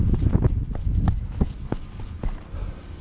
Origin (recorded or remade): recorded